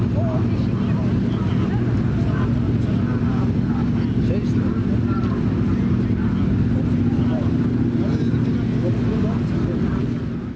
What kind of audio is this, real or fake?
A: real